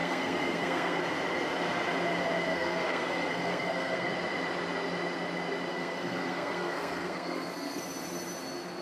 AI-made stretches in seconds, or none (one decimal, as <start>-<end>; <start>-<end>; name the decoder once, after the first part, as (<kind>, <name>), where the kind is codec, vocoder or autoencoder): 0.0-1.0 (codec, SNAC); 2.5-4.1; 5.7-7.8